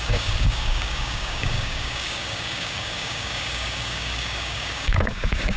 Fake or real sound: fake